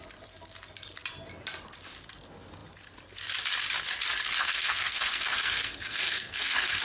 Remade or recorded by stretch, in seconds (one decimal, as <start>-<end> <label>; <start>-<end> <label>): 0.0-4.4 recorded; 4.4-6.8 remade